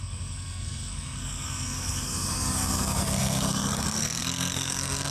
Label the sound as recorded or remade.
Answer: remade